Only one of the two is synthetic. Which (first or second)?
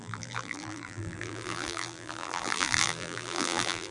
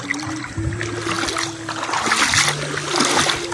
first